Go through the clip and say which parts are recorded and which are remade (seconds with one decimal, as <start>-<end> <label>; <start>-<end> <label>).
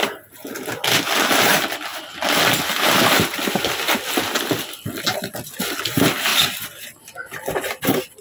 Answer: 0.0-8.2 recorded